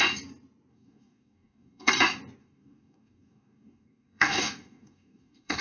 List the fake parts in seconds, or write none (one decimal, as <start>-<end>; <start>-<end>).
0.7-1.9; 2.4-5.6